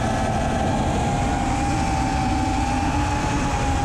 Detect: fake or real real